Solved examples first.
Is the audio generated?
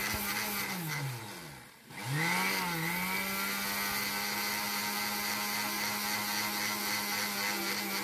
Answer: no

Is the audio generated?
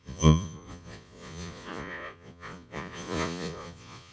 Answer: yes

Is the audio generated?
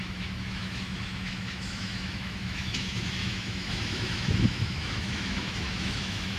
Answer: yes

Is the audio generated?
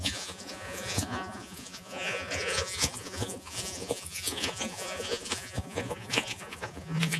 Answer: yes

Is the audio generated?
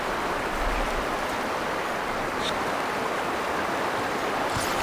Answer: no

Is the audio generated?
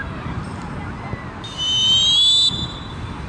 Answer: no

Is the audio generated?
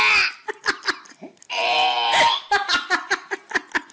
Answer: no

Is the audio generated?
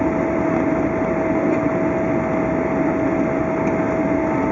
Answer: no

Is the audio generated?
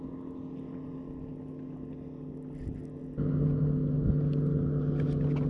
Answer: no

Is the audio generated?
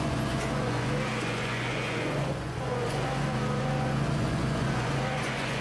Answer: yes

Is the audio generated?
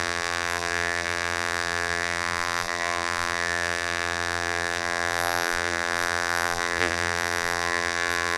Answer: yes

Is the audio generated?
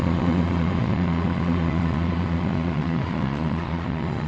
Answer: yes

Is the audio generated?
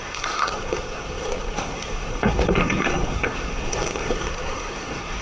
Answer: yes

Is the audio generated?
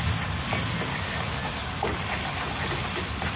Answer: no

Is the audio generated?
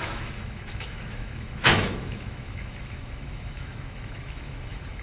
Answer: yes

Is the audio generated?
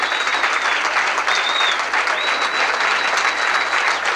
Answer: no